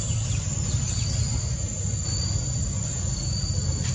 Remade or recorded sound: recorded